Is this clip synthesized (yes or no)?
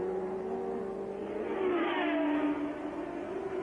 no